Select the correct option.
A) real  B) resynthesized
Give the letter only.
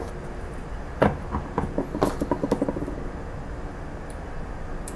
A